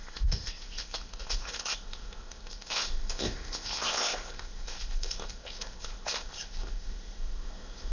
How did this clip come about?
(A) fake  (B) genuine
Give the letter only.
A